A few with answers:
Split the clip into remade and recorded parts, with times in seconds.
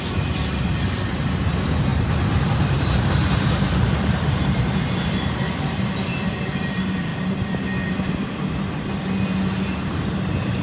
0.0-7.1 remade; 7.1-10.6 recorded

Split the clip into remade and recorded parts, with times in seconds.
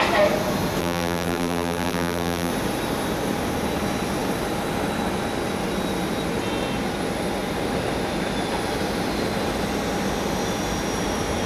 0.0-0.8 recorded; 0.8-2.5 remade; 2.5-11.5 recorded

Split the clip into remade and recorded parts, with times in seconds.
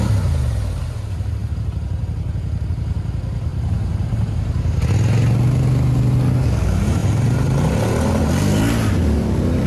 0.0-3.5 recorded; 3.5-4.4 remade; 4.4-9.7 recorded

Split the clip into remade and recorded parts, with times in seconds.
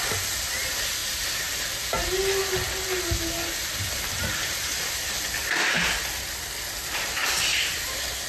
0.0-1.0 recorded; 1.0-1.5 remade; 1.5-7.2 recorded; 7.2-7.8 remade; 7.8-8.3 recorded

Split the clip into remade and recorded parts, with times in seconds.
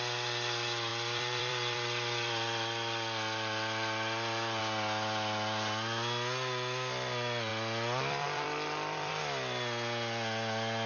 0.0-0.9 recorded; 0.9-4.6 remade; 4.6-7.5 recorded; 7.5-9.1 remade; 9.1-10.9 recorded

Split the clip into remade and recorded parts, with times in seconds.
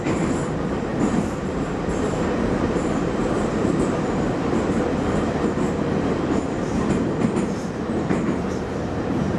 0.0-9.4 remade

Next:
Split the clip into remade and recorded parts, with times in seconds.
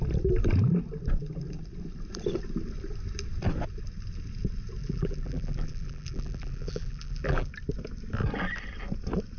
0.0-4.8 recorded; 4.8-7.5 remade; 7.5-9.4 recorded